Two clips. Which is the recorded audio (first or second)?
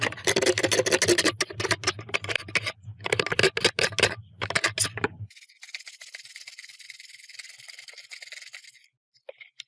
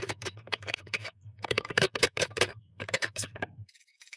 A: first